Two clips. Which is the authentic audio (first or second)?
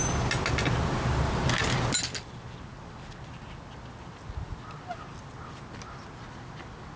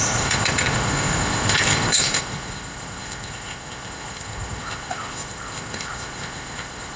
first